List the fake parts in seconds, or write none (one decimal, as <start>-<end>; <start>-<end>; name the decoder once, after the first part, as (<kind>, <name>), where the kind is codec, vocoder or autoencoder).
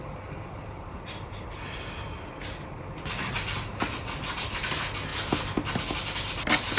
none